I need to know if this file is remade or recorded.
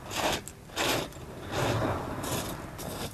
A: recorded